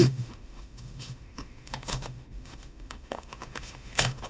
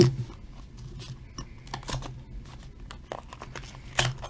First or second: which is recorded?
second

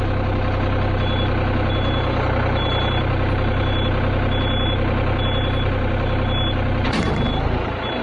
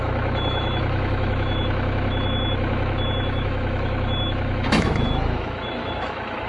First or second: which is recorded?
first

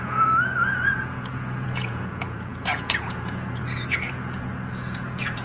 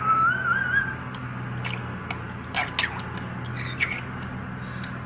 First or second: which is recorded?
second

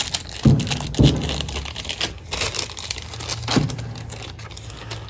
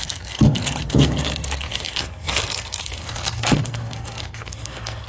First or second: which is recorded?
first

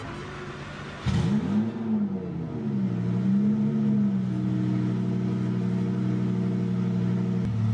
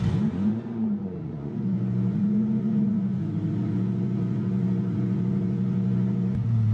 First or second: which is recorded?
first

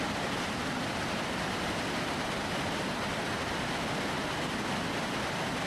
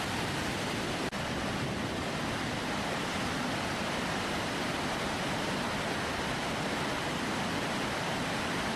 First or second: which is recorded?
first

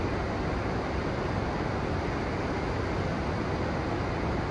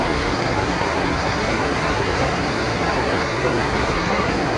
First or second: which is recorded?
first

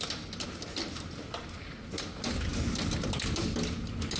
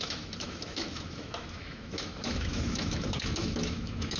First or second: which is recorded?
first